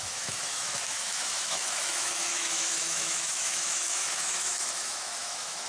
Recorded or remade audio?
remade